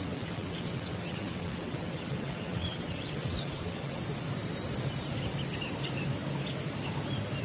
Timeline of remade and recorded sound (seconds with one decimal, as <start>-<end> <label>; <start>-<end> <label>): 0.0-4.0 remade; 4.0-7.4 recorded